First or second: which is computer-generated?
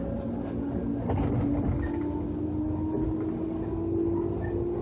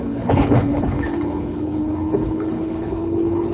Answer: second